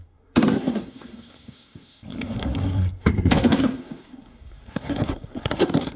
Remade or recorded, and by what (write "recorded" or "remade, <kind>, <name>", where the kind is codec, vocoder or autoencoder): remade, codec, SNAC